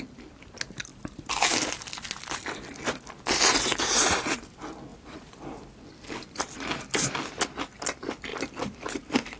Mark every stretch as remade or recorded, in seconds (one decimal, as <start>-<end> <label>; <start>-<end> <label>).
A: 0.0-0.9 recorded; 0.9-1.4 remade; 1.4-4.9 recorded; 4.9-7.3 remade; 7.3-8.3 recorded; 8.3-9.0 remade; 9.0-9.4 recorded